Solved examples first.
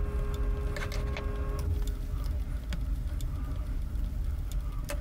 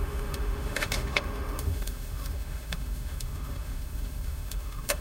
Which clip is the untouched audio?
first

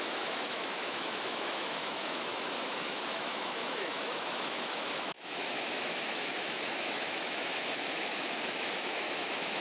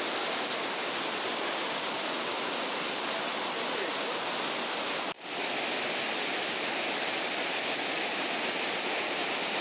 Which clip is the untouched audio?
second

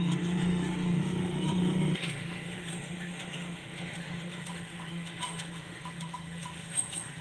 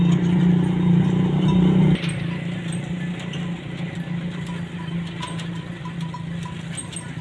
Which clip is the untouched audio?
second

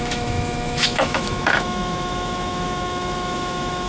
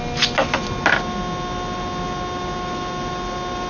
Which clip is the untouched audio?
second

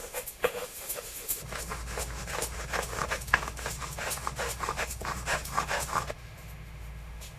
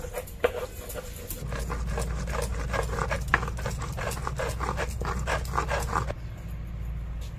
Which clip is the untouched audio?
second